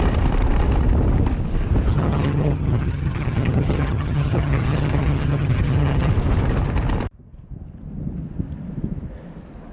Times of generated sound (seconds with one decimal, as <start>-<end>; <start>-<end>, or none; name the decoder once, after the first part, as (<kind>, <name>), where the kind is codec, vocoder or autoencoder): 1.9-6.1 (vocoder, HiFi-GAN)